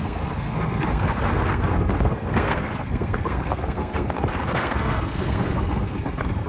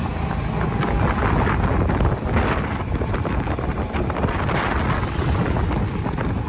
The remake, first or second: first